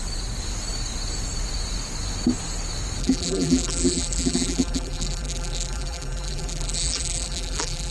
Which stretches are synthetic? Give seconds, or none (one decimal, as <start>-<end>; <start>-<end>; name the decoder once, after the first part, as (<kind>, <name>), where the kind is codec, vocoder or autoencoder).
3.0-7.9 (vocoder, BigVGAN v2)